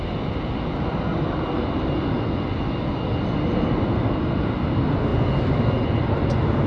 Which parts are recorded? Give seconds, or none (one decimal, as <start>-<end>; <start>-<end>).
0.0-6.7